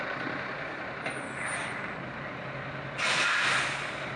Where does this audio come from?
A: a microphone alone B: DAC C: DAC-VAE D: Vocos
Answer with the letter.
A